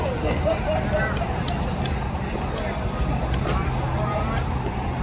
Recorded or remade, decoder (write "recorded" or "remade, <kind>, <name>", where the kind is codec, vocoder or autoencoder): recorded